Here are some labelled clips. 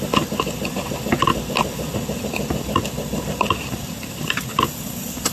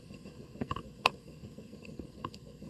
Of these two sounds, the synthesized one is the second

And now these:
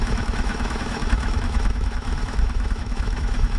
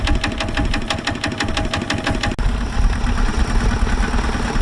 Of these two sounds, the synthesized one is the first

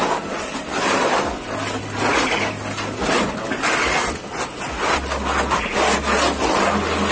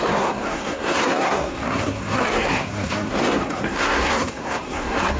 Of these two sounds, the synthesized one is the second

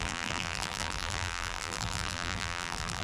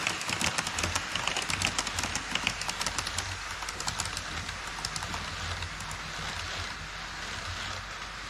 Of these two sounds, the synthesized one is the first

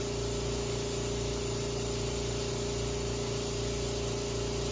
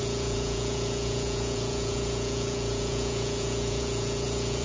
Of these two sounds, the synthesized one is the second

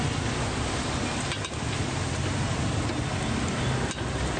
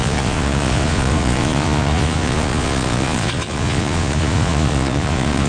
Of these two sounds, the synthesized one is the second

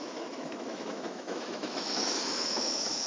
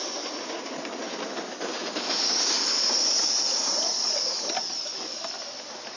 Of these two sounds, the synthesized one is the first